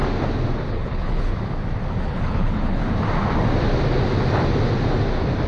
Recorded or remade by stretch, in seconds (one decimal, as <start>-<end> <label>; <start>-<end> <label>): 0.0-0.7 recorded; 0.7-1.3 remade; 1.3-2.0 recorded; 2.0-2.8 remade; 2.8-5.5 recorded

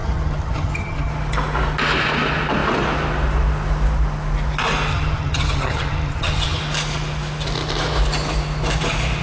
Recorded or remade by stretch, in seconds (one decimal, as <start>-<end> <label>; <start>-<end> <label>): 0.0-1.1 remade; 1.1-4.9 recorded; 4.9-6.6 remade; 6.6-9.2 recorded